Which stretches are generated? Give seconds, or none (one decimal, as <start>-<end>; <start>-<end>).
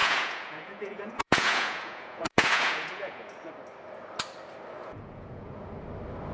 0.0-3.5; 4.8-5.7